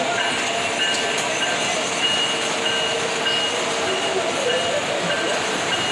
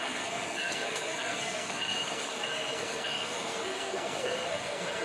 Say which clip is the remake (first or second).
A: second